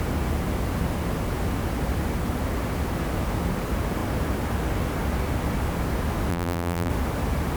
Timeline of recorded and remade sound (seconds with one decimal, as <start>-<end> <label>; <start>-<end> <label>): 0.0-6.3 recorded; 6.3-6.9 remade; 6.9-7.6 recorded